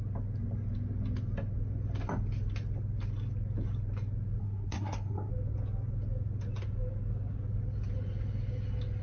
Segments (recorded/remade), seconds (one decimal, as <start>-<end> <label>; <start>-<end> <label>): 0.0-4.4 recorded; 4.4-5.3 remade; 5.3-9.0 recorded